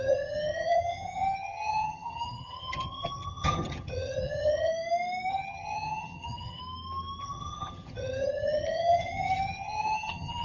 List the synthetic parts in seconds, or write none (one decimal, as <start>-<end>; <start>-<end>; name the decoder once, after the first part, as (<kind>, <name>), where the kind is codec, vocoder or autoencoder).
0.0-4.7 (vocoder, HiFi-GAN); 5.3-6.6; 7.2-10.4